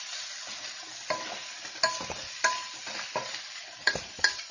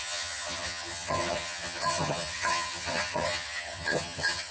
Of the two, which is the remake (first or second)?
second